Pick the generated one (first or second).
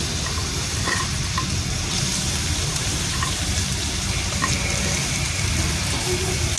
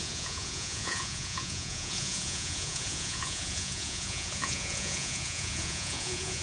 second